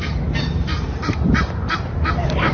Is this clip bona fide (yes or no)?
no